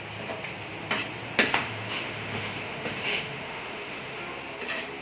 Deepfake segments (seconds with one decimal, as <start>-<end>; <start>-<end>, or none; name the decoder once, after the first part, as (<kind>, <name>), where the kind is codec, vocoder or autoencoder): 1.5-4.2 (autoencoder, DAC-VAE)